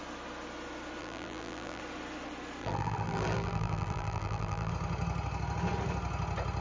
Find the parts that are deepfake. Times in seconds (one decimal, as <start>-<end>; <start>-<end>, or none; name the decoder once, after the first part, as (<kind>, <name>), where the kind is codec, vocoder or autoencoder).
1.0-1.8 (vocoder, BigVGAN v2); 2.6-4.7